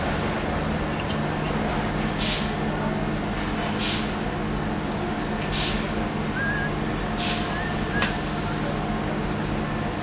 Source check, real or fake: real